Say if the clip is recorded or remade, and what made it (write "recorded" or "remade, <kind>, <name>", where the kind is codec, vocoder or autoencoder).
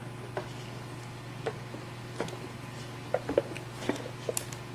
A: recorded